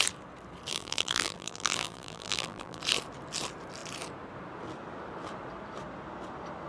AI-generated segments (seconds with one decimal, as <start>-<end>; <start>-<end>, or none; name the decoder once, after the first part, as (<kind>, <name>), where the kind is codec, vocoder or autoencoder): 0.7-2.8 (vocoder, BigVGAN v2)